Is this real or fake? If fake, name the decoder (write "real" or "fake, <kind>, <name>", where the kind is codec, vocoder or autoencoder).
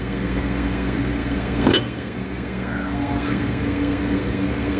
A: fake, codec, SNAC